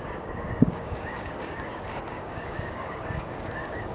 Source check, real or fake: fake